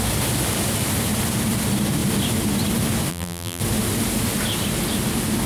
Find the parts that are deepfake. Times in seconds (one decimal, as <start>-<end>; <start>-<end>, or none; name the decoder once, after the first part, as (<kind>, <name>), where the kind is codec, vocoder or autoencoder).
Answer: 3.1-3.6 (vocoder, BigVGAN v2)